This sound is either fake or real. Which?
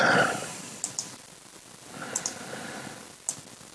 real